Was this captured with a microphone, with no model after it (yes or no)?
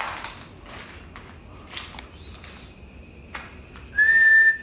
yes